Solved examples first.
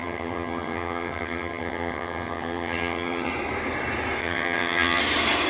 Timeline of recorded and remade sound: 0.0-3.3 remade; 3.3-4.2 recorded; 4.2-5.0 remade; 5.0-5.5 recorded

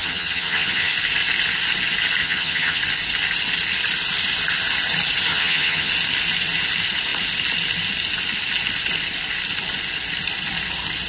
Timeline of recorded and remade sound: 0.0-0.9 remade; 0.9-2.2 recorded; 2.2-2.8 remade; 2.8-5.3 recorded; 5.3-5.9 remade; 5.9-11.1 recorded

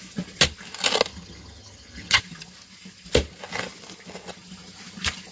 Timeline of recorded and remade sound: 0.0-1.1 recorded; 1.1-2.2 remade; 2.2-5.3 recorded

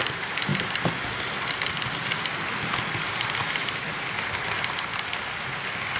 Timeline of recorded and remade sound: 0.0-6.0 recorded

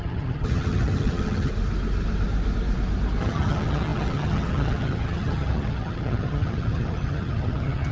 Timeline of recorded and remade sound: 0.0-1.5 remade; 1.5-3.2 recorded; 3.2-7.9 remade

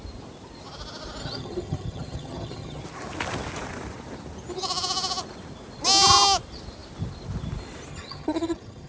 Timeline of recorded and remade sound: 0.0-1.2 recorded; 1.2-2.8 remade; 2.8-7.9 recorded; 7.9-8.9 remade

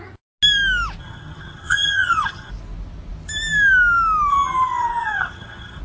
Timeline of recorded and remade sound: 0.0-1.0 recorded; 1.0-2.5 remade; 2.5-4.3 recorded; 4.3-5.8 remade

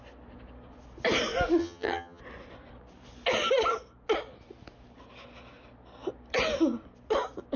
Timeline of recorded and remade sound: 0.0-1.6 recorded; 1.6-2.2 remade; 2.2-7.6 recorded